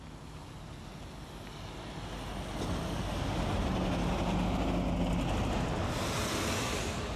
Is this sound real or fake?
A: real